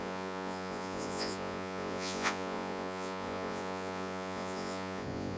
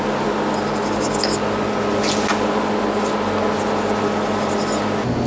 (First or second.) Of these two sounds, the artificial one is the first